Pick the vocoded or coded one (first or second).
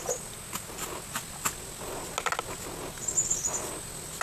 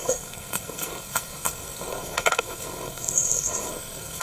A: second